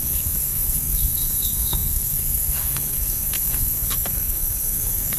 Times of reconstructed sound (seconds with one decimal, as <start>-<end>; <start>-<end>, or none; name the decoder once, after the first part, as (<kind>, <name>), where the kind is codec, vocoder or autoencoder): 0.0-5.2 (codec, SNAC)